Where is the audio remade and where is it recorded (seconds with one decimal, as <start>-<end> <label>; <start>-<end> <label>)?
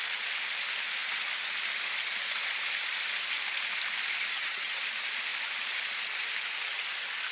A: 0.0-4.3 recorded; 4.3-4.8 remade; 4.8-7.3 recorded